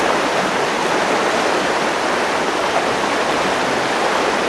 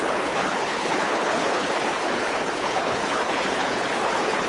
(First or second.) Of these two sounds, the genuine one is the first